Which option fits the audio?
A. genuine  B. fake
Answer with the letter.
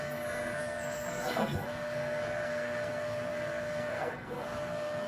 B